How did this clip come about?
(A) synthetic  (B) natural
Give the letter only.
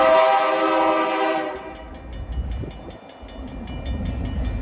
B